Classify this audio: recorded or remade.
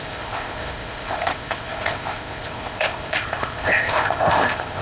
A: remade